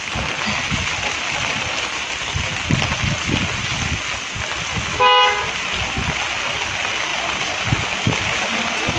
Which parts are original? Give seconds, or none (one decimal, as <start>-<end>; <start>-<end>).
0.0-9.0